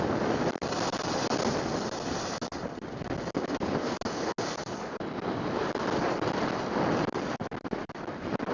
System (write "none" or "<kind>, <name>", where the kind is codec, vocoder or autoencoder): none